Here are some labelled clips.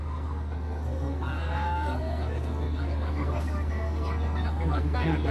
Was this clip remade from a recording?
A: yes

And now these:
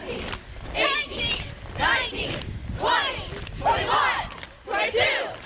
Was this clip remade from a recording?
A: no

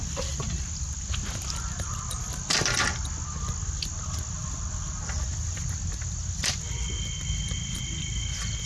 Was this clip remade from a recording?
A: no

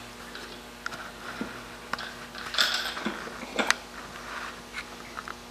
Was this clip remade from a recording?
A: no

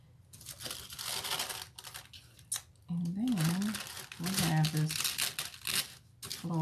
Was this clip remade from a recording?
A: no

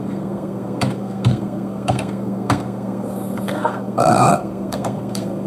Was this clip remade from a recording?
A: yes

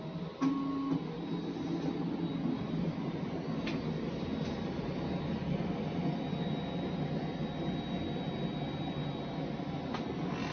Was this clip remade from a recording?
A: no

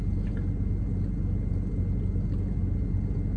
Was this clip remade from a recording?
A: no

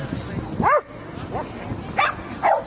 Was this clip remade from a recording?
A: no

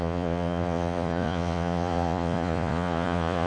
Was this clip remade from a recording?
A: yes